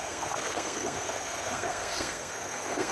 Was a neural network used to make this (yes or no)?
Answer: yes